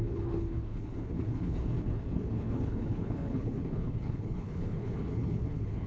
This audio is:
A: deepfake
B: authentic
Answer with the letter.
A